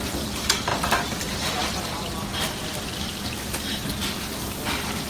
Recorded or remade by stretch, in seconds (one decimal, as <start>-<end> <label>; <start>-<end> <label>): 0.0-2.3 recorded; 2.3-3.0 remade; 3.0-5.1 recorded